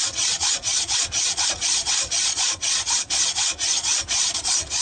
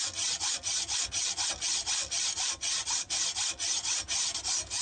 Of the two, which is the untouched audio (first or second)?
second